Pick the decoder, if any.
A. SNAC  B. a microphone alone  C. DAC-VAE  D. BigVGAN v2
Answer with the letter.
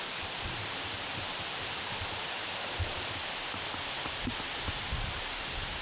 D